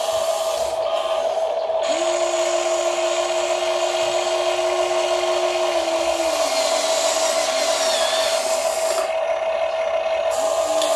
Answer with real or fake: real